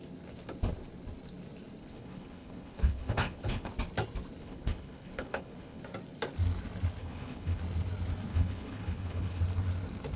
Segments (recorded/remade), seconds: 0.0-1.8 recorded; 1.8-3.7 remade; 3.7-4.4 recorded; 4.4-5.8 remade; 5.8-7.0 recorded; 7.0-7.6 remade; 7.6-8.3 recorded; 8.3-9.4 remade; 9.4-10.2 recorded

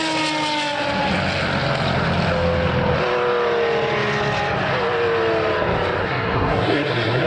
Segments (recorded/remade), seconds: 0.0-6.0 recorded; 6.0-7.3 remade

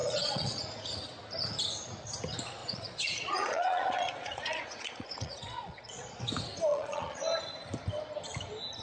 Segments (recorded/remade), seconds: 0.0-0.7 remade; 0.7-2.6 recorded; 2.6-6.2 remade; 6.2-6.7 recorded; 6.7-7.2 remade; 7.2-8.8 recorded

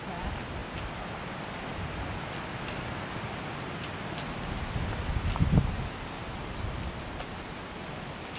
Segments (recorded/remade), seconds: 0.0-8.4 recorded

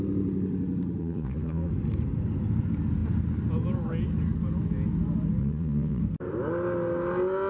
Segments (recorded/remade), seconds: 0.0-1.0 recorded; 1.0-1.7 remade; 1.7-5.4 recorded; 5.4-6.0 remade; 6.0-7.5 recorded

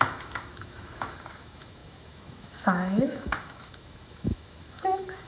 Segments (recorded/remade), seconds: 0.0-5.3 remade

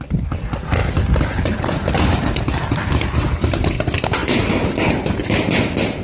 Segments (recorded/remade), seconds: 0.0-4.2 recorded; 4.2-4.9 remade; 4.9-6.0 recorded